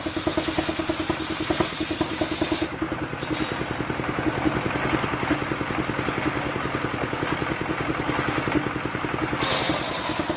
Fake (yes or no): no